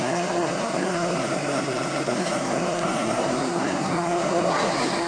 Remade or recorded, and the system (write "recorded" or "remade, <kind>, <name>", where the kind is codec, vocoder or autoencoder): remade, codec, SNAC